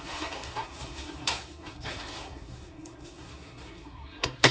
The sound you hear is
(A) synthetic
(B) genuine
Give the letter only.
A